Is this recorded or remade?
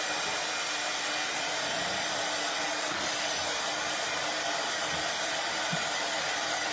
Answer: remade